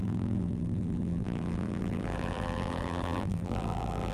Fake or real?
fake